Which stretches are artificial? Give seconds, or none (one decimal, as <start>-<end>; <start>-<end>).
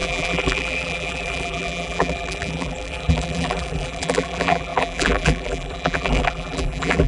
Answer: 0.0-7.1